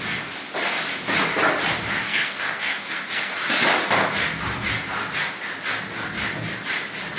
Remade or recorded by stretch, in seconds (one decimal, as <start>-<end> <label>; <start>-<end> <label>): 0.0-2.0 recorded; 2.0-3.3 remade; 3.3-7.2 recorded